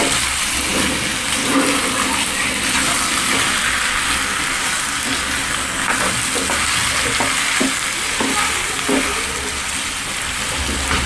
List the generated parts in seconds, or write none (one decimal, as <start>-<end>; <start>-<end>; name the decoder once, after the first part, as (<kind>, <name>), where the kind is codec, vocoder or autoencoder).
none